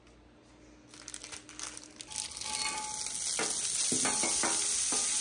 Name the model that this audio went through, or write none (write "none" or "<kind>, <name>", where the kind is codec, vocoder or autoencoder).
none